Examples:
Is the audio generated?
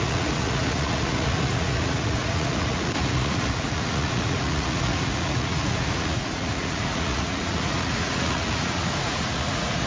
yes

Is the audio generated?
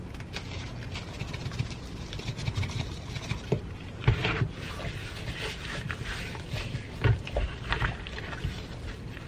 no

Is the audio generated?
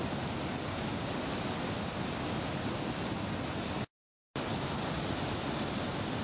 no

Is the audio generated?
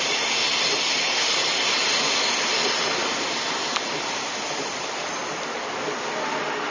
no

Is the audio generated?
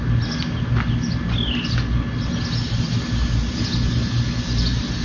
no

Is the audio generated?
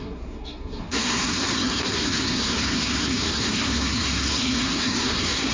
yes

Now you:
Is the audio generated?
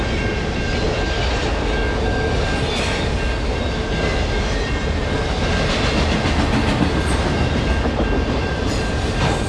no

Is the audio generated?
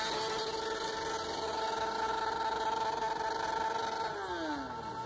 no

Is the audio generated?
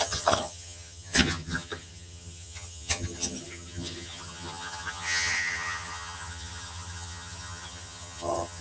yes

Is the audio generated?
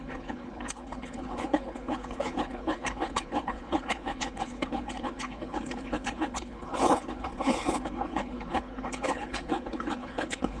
yes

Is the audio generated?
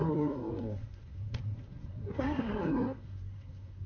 yes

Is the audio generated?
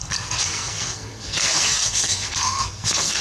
yes